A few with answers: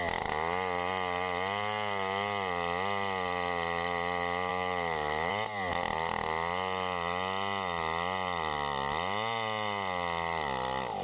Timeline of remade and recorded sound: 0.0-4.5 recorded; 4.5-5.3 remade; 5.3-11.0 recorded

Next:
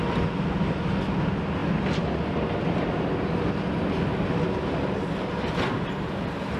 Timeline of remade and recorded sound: 0.0-6.6 recorded

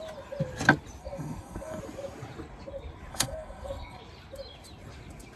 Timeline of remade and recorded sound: 0.0-1.0 recorded; 1.0-1.8 remade; 1.8-3.1 recorded; 3.1-4.0 remade; 4.0-5.4 recorded

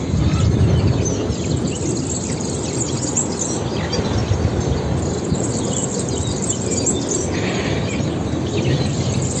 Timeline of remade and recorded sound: 0.0-9.4 recorded